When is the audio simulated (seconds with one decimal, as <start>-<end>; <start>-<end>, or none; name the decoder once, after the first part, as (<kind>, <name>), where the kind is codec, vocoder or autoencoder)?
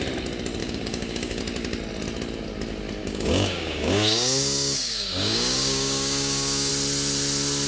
0.6-1.4 (codec, DAC); 3.0-6.7